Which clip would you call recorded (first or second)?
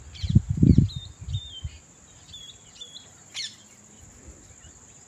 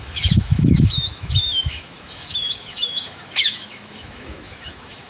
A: first